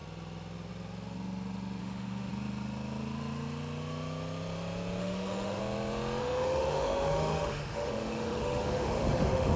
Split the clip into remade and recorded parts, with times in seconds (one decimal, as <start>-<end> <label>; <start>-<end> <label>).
0.0-1.8 recorded; 1.8-2.3 remade; 2.3-5.0 recorded; 5.0-5.6 remade; 5.6-6.2 recorded; 6.2-9.6 remade